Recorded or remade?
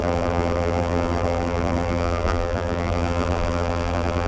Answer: remade